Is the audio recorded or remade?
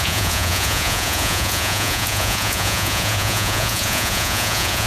remade